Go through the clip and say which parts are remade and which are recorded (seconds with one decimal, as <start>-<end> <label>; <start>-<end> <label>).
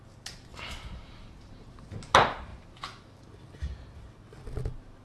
0.0-0.5 recorded; 0.5-1.5 remade; 1.5-2.5 recorded; 2.5-3.6 remade; 3.6-5.0 recorded